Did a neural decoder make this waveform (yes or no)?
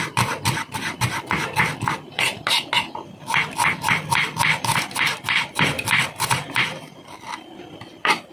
yes